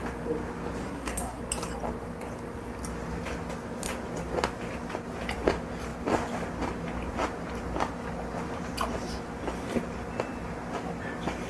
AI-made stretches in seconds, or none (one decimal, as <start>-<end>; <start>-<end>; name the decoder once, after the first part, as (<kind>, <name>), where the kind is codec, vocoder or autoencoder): 0.8-1.4 (codec, SNAC)